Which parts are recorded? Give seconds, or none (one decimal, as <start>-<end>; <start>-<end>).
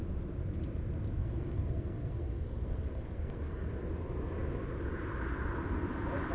0.0-1.2; 3.7-6.3